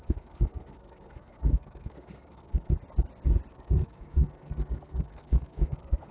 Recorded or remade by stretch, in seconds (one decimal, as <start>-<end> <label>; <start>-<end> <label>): 0.0-2.7 remade; 2.7-3.5 recorded; 3.5-6.1 remade